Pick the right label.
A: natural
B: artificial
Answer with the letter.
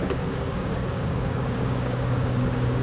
B